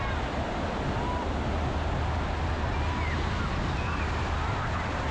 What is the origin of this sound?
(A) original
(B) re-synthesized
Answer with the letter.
A